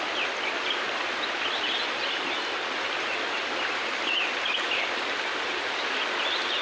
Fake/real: real